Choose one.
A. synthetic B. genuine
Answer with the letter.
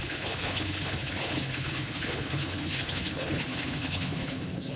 A